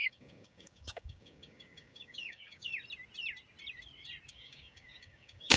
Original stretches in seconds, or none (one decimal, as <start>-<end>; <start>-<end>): 2.7-4.3